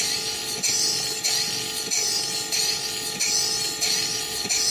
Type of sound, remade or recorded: recorded